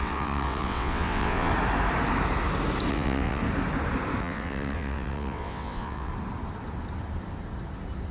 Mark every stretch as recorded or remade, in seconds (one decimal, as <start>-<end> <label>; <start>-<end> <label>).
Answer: 0.0-1.5 remade; 1.5-2.9 recorded; 2.9-3.4 remade; 3.4-4.2 recorded; 4.2-6.1 remade; 6.1-8.1 recorded